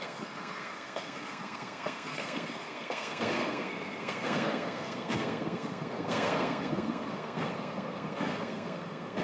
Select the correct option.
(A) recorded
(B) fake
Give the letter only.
B